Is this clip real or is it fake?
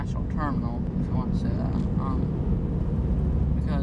real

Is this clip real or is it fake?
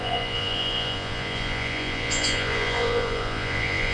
fake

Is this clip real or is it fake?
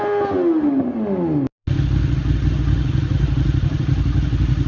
real